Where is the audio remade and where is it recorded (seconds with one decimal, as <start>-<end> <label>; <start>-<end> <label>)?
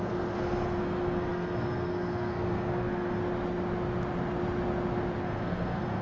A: 0.0-3.2 remade; 3.2-5.2 recorded; 5.2-6.0 remade